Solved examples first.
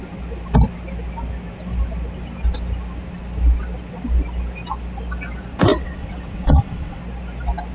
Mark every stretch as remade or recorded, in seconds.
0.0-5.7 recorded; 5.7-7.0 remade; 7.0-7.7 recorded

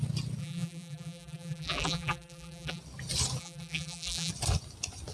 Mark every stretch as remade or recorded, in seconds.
0.0-0.4 recorded; 0.4-2.8 remade; 2.8-3.4 recorded; 3.4-4.3 remade; 4.3-5.1 recorded

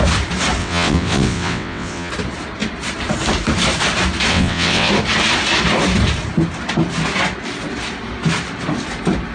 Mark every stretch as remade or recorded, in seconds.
0.0-0.6 recorded; 0.6-2.1 remade; 2.1-4.3 recorded; 4.3-4.9 remade; 4.9-9.3 recorded

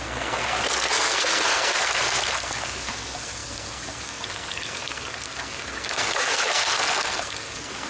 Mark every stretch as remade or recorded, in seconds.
0.0-7.9 remade

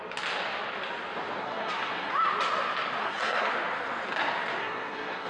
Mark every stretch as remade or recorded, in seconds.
0.0-1.4 recorded; 1.4-2.1 remade; 2.1-3.0 recorded; 3.0-3.5 remade; 3.5-4.6 recorded; 4.6-5.3 remade

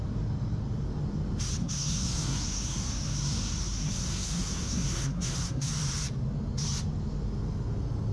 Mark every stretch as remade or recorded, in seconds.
0.0-1.6 recorded; 1.6-5.7 remade; 5.7-8.1 recorded

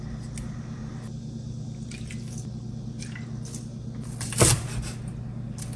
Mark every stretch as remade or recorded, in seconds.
0.0-5.8 recorded